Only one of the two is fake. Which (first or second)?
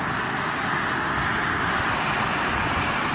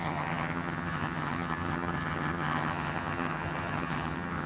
second